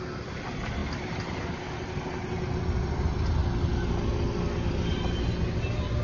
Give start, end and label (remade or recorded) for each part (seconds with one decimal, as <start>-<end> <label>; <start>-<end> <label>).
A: 0.0-6.0 recorded